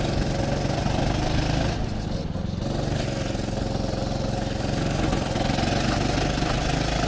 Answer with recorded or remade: recorded